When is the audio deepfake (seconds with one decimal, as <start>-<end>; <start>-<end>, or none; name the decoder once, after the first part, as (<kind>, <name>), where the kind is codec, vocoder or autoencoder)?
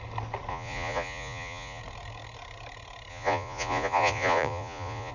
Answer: 0.5-1.8 (vocoder, Vocos); 3.1-5.1